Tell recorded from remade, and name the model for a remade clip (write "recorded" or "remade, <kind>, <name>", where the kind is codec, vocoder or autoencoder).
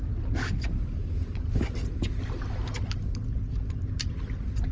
recorded